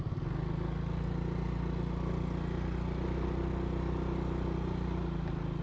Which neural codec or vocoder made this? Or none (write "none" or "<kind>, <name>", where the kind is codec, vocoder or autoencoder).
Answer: none